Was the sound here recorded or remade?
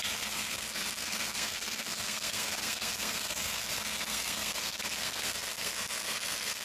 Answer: remade